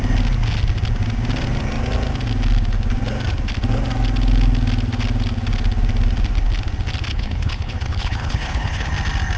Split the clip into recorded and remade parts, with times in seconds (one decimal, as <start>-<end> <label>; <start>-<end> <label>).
0.0-7.1 recorded; 7.1-8.9 remade; 8.9-9.4 recorded